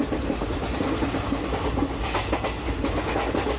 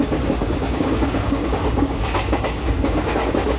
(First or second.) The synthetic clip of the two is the second